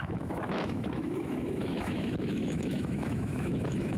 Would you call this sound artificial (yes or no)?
yes